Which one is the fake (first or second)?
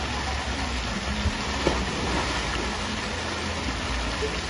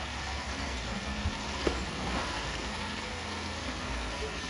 second